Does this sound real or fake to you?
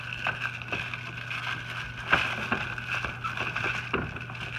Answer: real